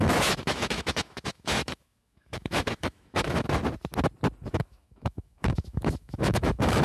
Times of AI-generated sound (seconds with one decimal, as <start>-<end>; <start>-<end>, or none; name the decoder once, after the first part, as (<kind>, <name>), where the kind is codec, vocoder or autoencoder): 0.0-3.6 (autoencoder, DAC-VAE); 4.5-6.8